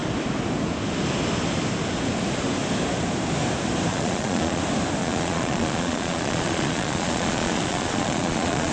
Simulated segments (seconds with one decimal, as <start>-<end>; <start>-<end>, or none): 3.9-4.6; 5.0-8.7